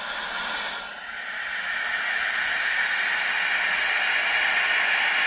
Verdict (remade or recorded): recorded